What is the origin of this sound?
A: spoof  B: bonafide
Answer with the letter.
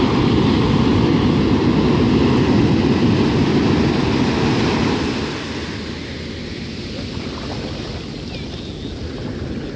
B